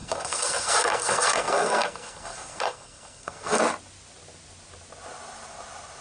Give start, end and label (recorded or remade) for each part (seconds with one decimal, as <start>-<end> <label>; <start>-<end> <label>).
0.0-3.6 remade; 3.6-6.0 recorded